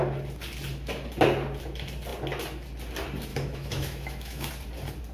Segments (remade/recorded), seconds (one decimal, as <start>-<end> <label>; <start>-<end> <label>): 0.0-3.3 recorded; 3.3-4.5 remade; 4.5-5.1 recorded